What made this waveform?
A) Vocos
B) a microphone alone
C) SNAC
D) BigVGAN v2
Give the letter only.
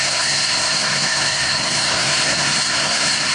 C